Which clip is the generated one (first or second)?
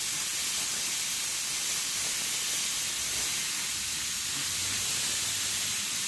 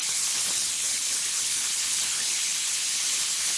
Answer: second